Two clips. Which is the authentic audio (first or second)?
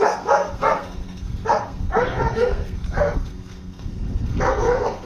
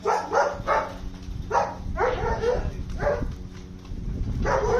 second